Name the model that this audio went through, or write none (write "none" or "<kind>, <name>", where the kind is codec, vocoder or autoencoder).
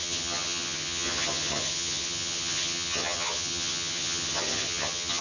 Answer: vocoder, HiFi-GAN